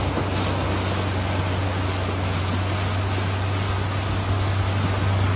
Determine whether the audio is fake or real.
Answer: real